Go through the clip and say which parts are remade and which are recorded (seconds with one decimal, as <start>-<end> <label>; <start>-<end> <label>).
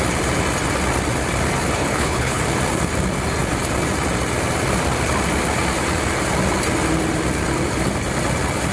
0.0-1.8 recorded; 1.8-2.4 remade; 2.4-8.7 recorded